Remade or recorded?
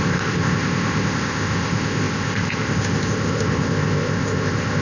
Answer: remade